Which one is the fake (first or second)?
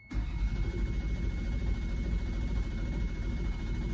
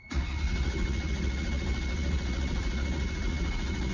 second